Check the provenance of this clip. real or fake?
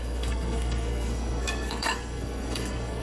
fake